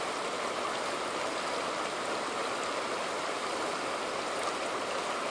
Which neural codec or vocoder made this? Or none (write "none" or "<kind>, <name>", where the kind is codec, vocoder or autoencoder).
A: none